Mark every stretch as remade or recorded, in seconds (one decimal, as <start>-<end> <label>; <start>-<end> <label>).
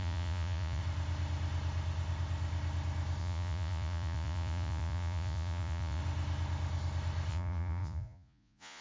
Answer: 0.0-0.8 remade; 0.8-3.2 recorded; 3.2-6.0 remade; 6.0-7.3 recorded; 7.3-8.8 remade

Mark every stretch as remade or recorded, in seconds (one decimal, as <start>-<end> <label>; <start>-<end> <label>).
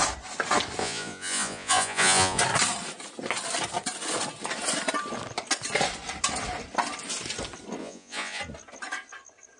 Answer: 0.0-0.8 recorded; 0.8-2.4 remade; 2.4-7.8 recorded; 7.8-8.4 remade; 8.4-9.6 recorded